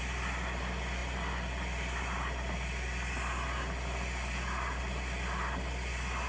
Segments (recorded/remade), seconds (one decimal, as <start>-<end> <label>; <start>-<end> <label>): 0.0-6.3 recorded

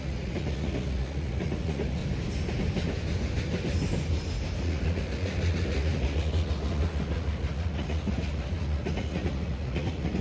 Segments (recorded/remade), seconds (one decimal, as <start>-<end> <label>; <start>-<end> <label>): 0.0-2.0 remade; 2.0-4.6 recorded; 4.6-10.2 remade